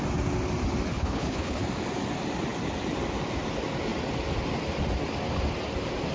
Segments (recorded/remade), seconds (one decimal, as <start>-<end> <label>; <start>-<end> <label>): 0.0-0.9 recorded; 0.9-1.6 remade; 1.6-6.1 recorded